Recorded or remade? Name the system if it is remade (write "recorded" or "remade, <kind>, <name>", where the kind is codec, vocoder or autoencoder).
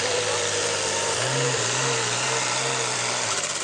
remade, vocoder, BigVGAN v2